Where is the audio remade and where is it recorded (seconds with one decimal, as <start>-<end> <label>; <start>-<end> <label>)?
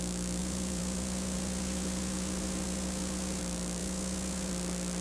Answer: 0.0-0.4 recorded; 0.4-3.4 remade; 3.4-3.8 recorded; 3.8-4.5 remade; 4.5-5.0 recorded